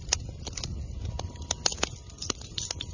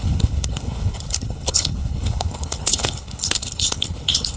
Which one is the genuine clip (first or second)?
first